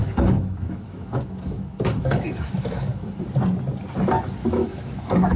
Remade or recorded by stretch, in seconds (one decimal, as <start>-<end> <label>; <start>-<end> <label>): 0.0-3.2 remade; 3.2-4.4 recorded; 4.4-5.4 remade